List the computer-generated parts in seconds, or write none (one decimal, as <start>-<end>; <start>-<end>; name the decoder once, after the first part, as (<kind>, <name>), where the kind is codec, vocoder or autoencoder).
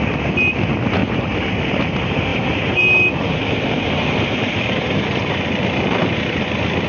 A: 1.0-1.6 (vocoder, BigVGAN v2); 2.3-6.4